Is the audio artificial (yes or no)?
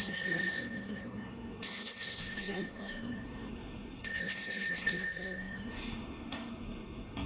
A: yes